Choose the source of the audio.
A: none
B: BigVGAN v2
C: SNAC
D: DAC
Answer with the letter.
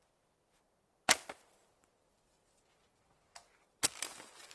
A